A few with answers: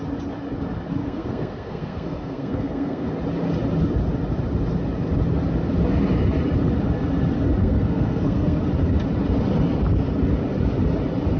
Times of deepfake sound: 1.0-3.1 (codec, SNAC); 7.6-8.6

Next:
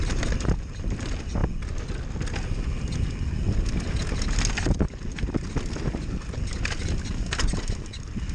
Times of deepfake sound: none

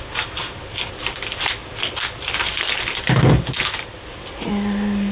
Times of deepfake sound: none

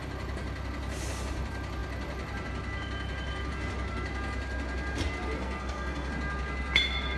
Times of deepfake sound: 5.4-6.1 (codec, SNAC)

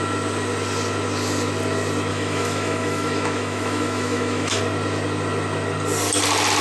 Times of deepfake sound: 2.1-4.6 (autoencoder, DAC-VAE)

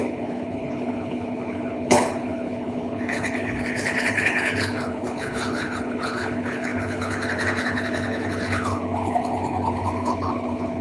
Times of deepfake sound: 0.0-10.8 (codec, HILCodec)